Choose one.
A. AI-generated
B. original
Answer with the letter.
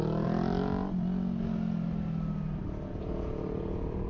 B